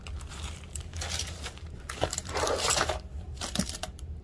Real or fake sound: fake